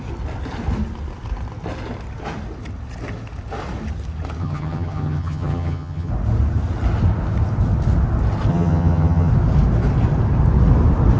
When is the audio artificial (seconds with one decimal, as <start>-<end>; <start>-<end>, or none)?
4.4-6.1; 8.5-9.3